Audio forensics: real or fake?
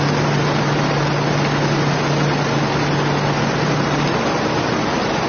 real